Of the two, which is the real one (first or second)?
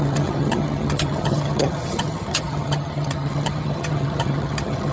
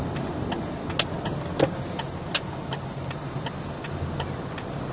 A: second